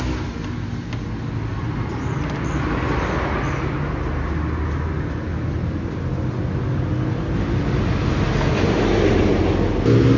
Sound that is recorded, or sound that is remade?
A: recorded